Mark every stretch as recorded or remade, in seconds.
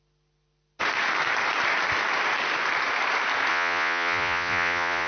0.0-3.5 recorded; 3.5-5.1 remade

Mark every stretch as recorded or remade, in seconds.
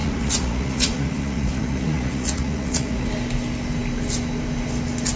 0.0-3.1 remade; 3.1-5.2 recorded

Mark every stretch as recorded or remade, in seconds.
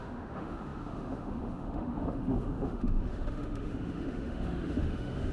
0.0-5.3 remade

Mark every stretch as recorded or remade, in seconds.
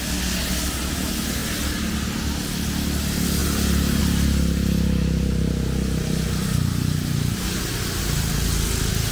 0.0-9.1 recorded